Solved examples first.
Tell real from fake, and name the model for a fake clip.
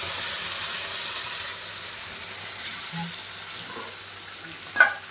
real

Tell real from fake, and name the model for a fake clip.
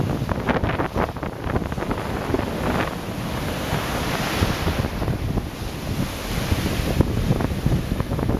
real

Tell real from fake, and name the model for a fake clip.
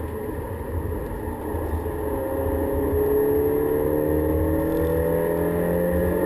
real